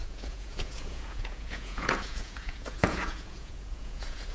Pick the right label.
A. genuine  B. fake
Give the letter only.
B